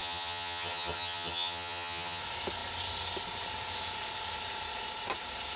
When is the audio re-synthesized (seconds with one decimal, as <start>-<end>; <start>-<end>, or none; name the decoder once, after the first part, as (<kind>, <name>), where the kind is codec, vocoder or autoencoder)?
0.0-2.2 (vocoder, HiFi-GAN)